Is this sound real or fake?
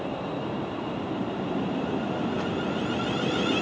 real